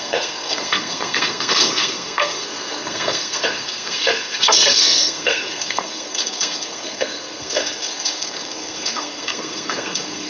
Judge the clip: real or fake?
fake